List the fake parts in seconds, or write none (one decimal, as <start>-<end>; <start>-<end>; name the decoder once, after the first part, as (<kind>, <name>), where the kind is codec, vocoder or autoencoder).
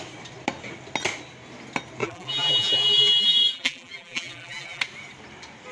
2.0-4.8 (vocoder, BigVGAN v2)